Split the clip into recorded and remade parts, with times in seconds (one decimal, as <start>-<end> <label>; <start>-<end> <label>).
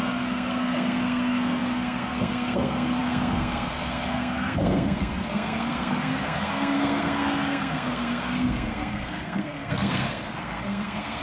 0.0-11.2 remade